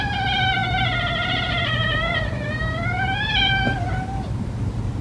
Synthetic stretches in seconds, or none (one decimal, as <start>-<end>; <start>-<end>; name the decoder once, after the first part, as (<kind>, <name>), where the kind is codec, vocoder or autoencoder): 0.0-5.0 (vocoder, BigVGAN v2)